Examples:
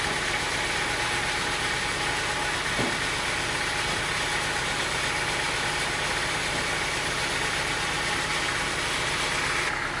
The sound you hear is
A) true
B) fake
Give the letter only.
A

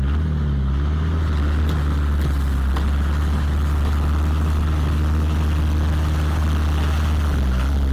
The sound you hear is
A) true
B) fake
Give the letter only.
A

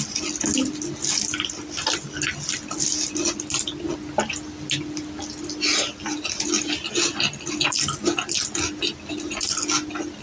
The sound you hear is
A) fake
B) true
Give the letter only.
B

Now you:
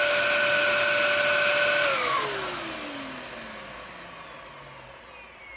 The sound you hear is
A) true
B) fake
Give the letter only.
A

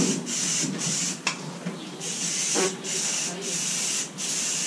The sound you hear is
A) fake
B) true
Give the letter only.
A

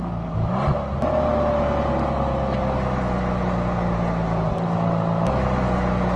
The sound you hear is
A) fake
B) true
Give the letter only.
B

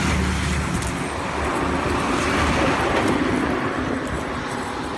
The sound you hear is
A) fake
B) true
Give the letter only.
B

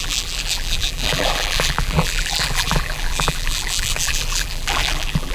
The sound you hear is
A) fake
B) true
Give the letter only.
A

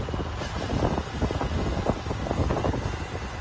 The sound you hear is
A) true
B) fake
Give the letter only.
A